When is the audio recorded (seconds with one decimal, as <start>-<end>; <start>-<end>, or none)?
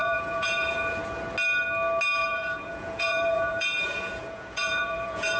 1.0-2.2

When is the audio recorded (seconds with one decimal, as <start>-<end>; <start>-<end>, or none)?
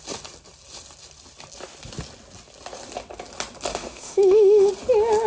0.0-3.7; 4.7-5.3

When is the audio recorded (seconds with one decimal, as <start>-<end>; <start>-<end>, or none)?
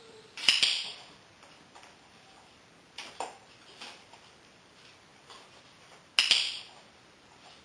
0.0-7.6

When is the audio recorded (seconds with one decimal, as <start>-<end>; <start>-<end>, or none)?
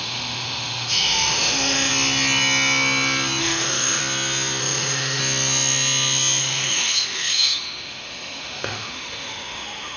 1.9-3.4; 4.0-4.6; 5.2-6.4